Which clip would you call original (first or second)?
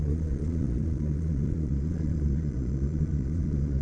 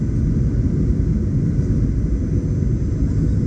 second